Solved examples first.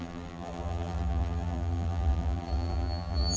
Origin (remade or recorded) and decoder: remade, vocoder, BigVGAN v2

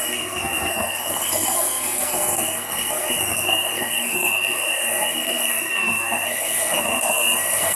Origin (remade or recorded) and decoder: remade, codec, SNAC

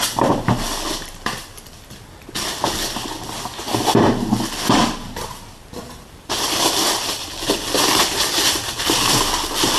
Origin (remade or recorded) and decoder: recorded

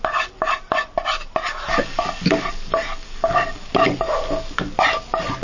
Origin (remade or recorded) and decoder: recorded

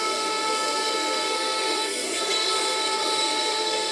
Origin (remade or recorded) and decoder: remade, codec, SNAC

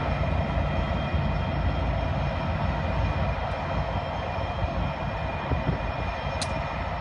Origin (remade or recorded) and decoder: recorded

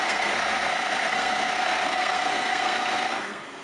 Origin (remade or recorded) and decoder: remade, codec, SNAC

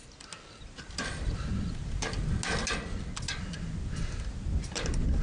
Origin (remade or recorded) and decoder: recorded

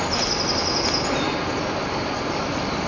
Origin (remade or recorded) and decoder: recorded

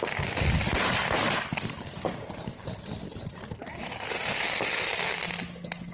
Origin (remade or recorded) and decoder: recorded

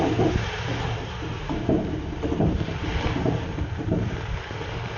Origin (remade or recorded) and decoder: remade, vocoder, BigVGAN v2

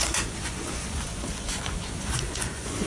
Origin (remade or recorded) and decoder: remade, vocoder, Vocos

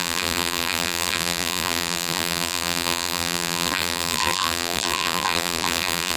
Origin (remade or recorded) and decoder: remade, vocoder, BigVGAN v2